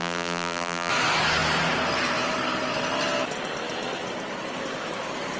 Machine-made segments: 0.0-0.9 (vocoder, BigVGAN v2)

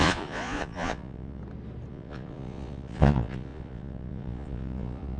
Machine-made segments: 0.0-1.4 (vocoder, Vocos); 1.9-5.2

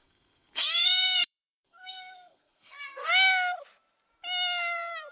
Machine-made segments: 0.0-3.1 (codec, SNAC)

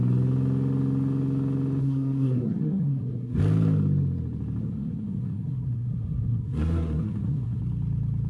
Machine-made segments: 1.8-3.4 (codec, SNAC); 4.6-7.6

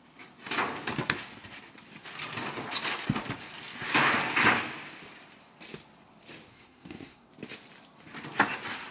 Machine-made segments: 6.5-7.3 (codec, SNAC)

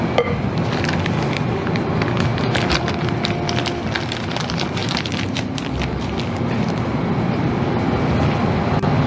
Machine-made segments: 2.3-2.9 (vocoder, BigVGAN v2); 4.8-6.2

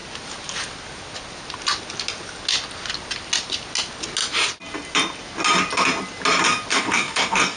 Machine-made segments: 6.7-7.6 (codec, DAC)

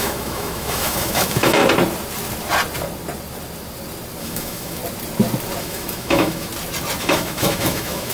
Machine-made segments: 0.0-1.6 (autoencoder, DAC-VAE); 4.2-4.8; 5.6-6.5; 7.0-8.1